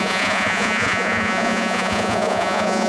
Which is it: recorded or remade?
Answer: remade